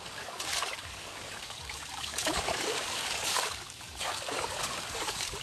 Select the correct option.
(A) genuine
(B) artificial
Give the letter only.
B